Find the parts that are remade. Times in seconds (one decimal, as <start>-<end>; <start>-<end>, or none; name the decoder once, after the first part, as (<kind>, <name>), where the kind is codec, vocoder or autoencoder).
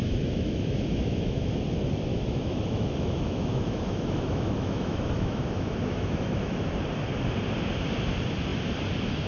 0.0-1.6 (autoencoder, DAC-VAE); 2.1-6.7